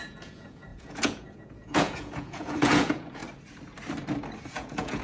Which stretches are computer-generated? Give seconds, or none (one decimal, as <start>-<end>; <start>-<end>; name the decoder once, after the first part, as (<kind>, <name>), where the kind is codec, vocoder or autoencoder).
0.0-3.2 (vocoder, Vocos); 4.5-5.0